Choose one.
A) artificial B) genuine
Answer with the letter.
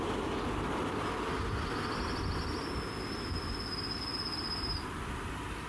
B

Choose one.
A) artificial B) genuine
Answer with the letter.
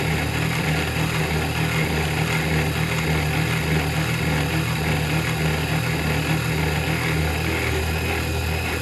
B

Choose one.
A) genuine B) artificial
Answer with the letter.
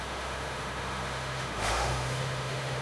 B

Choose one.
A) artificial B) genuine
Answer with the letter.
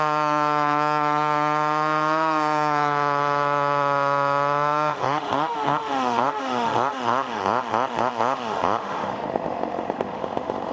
A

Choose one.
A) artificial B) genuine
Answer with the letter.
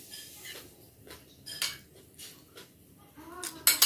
B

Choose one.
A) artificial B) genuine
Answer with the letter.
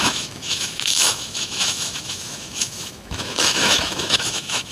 A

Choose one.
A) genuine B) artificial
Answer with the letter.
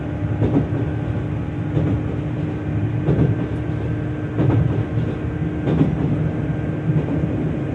A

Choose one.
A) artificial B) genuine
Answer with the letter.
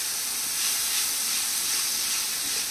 B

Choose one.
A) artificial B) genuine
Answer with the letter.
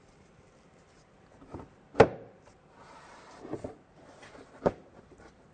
B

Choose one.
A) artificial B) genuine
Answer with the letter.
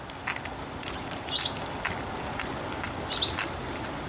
B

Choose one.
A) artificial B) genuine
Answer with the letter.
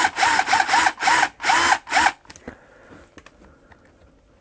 B